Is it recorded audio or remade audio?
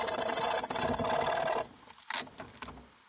recorded